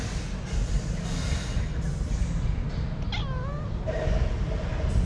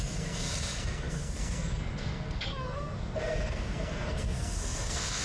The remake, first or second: second